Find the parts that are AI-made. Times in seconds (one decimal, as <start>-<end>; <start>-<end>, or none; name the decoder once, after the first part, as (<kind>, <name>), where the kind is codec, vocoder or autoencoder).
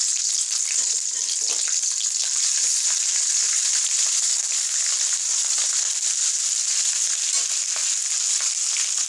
2.2-3.3 (vocoder, BigVGAN v2); 7.8-8.6